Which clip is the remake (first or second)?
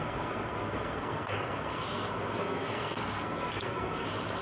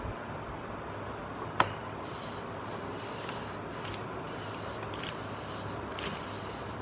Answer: first